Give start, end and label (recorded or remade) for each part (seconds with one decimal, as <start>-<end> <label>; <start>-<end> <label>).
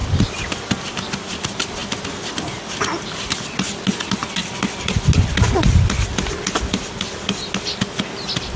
0.0-8.6 recorded